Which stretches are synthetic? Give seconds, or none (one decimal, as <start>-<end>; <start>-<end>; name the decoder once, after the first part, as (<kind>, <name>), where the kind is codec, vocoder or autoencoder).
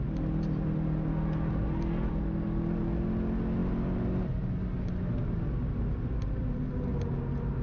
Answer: none